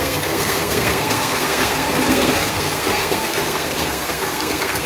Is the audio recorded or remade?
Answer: remade